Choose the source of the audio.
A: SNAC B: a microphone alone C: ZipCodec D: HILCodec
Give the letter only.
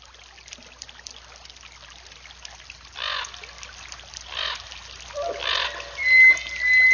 B